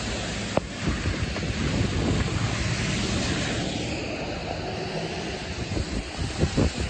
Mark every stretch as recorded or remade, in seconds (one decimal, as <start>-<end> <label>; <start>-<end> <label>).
0.0-6.9 recorded